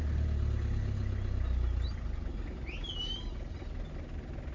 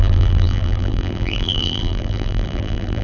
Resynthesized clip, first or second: second